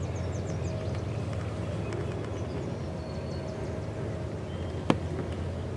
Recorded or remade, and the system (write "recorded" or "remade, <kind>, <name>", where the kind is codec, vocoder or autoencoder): recorded